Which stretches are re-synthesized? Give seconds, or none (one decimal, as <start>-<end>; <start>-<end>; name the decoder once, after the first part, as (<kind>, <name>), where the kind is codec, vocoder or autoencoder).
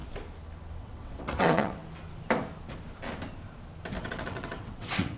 0.8-1.8 (vocoder, WaveNeXt); 4.0-5.2